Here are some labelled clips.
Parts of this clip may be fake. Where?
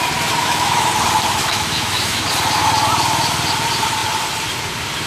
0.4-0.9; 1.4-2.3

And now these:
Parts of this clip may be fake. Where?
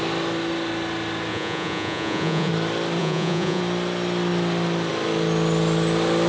1.3-2.5; 3.0-3.6